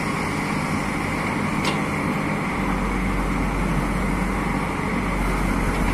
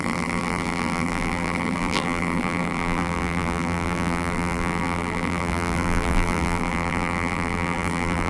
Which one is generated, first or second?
second